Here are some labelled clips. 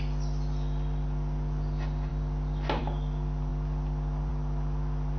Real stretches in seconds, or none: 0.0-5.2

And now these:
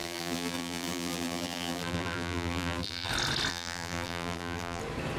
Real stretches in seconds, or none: 3.1-3.5; 4.8-5.2

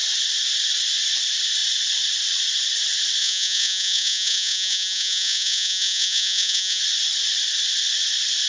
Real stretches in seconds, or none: 0.0-3.2; 6.8-8.5

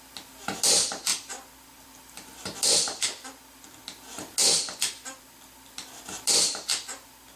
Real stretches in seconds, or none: 0.0-7.4

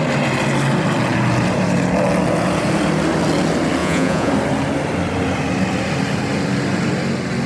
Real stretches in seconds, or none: 0.0-3.8; 4.3-7.5

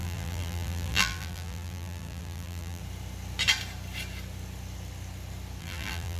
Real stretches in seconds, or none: 2.8-5.6

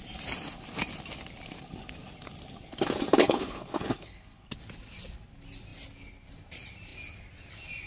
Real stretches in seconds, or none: 0.0-3.2; 4.5-7.9